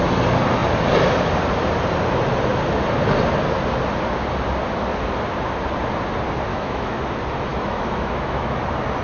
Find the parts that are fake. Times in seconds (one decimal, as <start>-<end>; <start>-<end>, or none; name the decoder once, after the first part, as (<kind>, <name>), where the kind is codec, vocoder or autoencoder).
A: 6.5-7.0 (autoencoder, DAC-VAE); 7.5-8.6